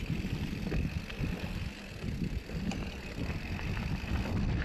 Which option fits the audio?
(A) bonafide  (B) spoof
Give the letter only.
A